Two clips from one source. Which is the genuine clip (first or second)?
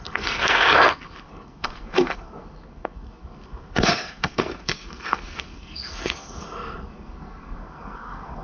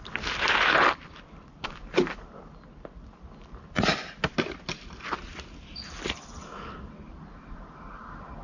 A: second